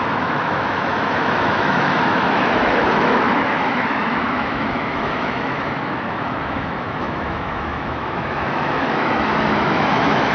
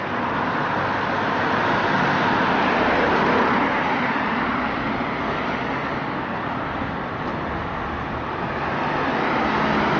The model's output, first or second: first